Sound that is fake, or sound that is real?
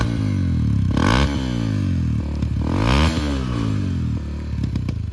real